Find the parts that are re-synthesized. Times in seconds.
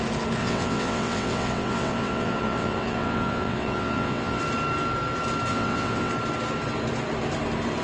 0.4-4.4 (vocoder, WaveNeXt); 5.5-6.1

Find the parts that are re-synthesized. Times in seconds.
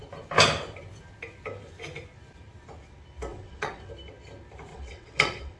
3.3-3.9 (vocoder, WaveNeXt); 4.7-5.6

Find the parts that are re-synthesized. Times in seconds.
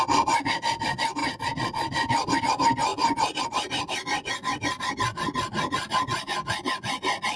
none